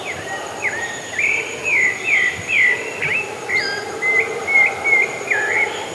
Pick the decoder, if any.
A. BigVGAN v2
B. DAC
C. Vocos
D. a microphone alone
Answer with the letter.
D